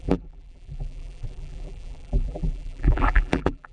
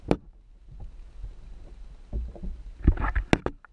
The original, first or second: second